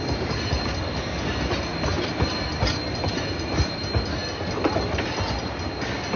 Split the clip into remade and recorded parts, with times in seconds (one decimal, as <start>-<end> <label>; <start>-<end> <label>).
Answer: 0.0-6.2 recorded